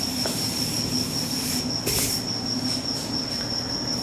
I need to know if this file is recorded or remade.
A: recorded